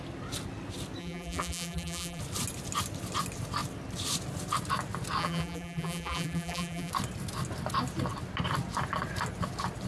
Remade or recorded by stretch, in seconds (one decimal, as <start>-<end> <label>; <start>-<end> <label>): 0.0-1.0 recorded; 1.0-2.2 remade; 2.2-5.2 recorded; 5.2-6.9 remade; 6.9-9.9 recorded